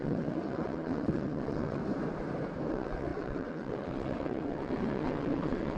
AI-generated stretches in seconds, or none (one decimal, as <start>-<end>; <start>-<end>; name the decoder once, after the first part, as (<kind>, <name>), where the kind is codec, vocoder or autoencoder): 0.0-1.8 (vocoder, WaveNeXt); 2.7-5.8